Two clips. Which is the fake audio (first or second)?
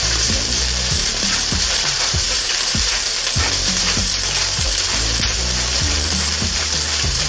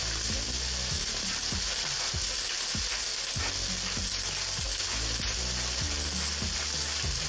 first